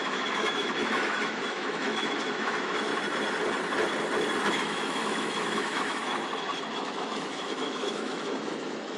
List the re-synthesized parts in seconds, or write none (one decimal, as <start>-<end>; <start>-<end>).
0.0-2.9; 4.5-6.0; 6.7-9.0